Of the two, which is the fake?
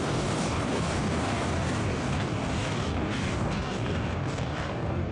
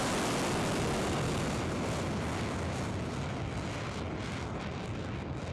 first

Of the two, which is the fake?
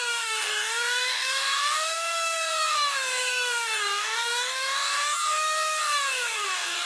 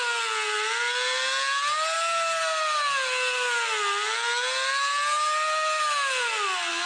first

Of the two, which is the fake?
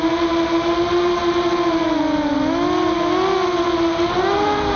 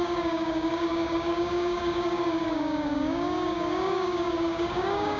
second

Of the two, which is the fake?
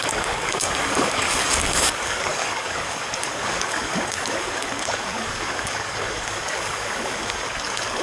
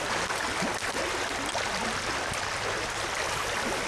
first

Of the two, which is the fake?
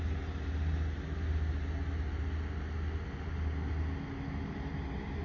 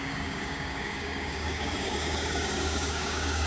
second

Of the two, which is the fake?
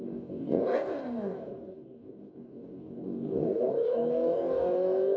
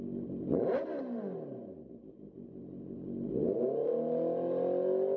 first